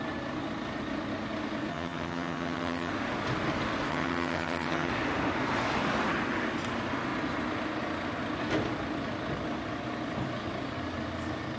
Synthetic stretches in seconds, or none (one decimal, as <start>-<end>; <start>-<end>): 1.7-2.9; 3.9-4.9